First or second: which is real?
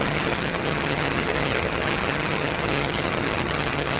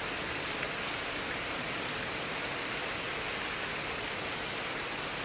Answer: second